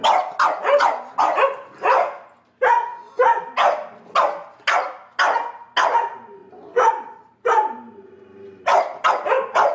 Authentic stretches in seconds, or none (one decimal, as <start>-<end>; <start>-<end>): 0.0-6.4; 8.1-9.7